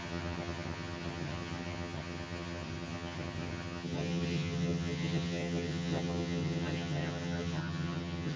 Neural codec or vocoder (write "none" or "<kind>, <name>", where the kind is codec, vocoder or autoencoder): vocoder, HiFi-GAN